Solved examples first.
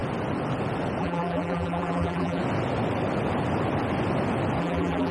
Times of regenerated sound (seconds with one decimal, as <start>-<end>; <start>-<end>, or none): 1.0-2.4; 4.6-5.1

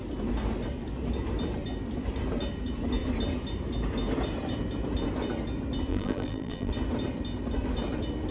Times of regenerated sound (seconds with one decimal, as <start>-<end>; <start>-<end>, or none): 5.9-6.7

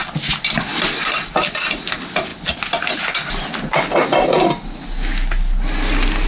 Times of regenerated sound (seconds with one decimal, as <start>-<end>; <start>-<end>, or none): none

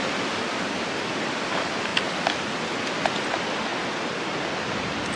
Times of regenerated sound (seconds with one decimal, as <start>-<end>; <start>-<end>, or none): 0.0-1.9; 2.5-3.7

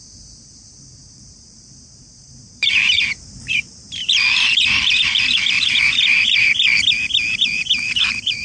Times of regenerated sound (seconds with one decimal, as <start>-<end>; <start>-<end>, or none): 0.0-6.7; 7.4-8.4

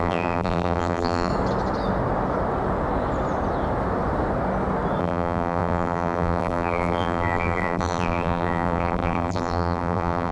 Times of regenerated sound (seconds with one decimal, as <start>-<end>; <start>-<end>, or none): 0.0-1.3; 5.0-10.3

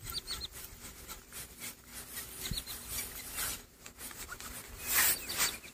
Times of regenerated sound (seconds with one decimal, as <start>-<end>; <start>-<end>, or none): none